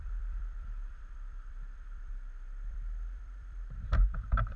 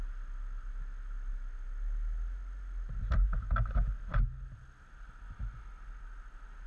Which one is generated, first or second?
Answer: first